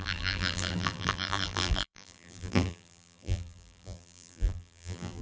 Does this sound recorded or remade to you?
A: remade